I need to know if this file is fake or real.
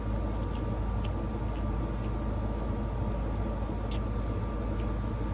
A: real